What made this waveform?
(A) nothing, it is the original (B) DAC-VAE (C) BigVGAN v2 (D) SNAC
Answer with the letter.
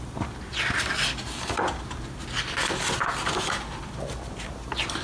A